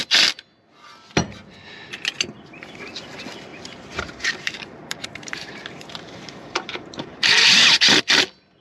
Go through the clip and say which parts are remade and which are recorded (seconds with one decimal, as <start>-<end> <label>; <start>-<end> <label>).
0.0-3.5 recorded; 3.5-8.0 remade; 8.0-8.6 recorded